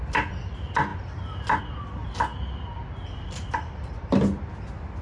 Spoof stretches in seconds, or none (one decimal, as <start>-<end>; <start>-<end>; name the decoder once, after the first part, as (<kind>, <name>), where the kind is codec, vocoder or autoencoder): none